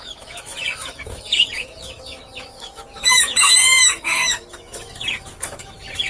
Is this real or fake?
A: fake